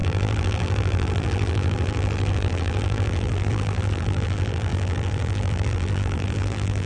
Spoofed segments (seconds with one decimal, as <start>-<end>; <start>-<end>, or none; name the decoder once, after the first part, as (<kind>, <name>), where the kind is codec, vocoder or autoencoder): 0.0-6.9 (vocoder, BigVGAN v2)